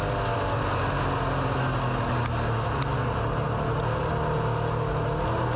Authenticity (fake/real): real